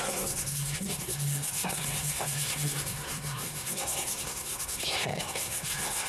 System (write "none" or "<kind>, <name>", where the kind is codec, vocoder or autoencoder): codec, SNAC